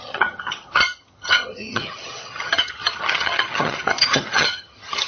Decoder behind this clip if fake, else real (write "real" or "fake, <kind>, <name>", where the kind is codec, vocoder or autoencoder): fake, vocoder, HiFi-GAN